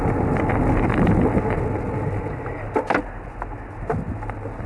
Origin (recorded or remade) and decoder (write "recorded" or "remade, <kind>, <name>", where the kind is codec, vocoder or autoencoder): recorded